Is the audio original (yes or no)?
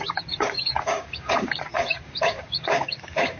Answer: no